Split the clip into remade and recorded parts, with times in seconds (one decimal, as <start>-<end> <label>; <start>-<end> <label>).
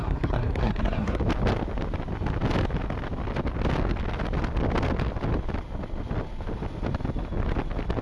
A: 0.0-1.2 remade; 1.2-8.0 recorded